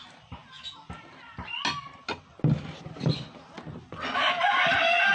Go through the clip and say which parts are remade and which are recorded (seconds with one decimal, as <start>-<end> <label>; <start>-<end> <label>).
0.0-5.1 recorded